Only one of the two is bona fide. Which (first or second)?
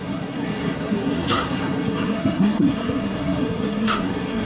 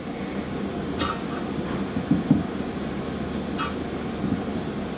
second